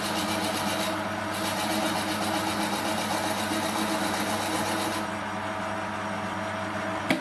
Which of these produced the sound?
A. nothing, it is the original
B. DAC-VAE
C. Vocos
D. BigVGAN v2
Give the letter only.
A